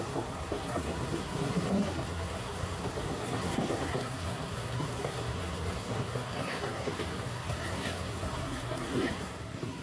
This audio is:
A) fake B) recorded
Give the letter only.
A